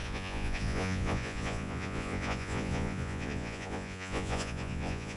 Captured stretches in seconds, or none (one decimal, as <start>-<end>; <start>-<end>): none